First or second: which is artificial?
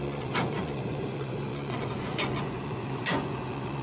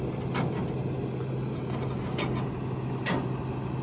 first